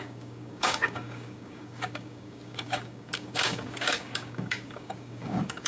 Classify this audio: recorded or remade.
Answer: remade